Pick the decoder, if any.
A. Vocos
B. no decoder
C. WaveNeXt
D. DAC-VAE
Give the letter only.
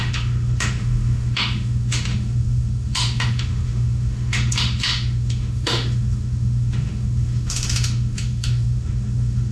D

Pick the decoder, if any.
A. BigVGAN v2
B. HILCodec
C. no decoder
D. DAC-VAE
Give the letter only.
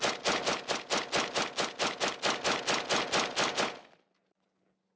C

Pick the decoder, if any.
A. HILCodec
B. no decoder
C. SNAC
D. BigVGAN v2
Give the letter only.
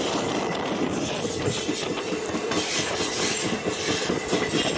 B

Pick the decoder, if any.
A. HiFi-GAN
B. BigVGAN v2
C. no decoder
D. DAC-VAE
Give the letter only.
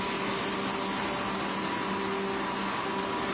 C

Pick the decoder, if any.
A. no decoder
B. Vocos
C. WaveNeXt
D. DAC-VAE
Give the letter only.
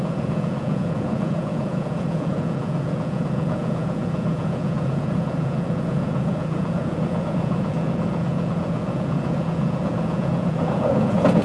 B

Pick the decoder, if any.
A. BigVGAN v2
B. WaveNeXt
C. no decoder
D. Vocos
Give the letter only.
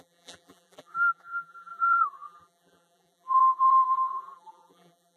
A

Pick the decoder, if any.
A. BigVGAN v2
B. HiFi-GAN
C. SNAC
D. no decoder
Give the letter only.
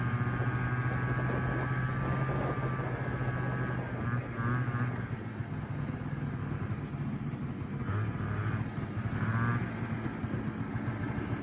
D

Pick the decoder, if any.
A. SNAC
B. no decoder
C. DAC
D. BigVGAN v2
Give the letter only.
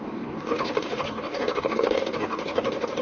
C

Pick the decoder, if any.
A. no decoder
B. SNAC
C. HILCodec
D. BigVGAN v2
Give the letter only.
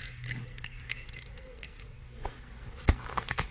B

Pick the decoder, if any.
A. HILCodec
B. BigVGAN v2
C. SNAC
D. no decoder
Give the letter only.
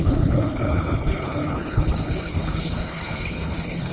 A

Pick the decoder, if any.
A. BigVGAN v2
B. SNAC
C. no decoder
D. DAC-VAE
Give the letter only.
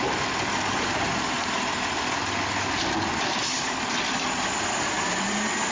C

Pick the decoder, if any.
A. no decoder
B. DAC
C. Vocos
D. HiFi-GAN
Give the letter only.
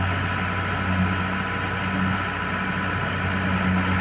A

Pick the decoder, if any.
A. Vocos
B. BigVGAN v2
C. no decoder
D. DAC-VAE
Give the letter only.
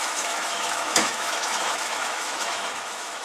D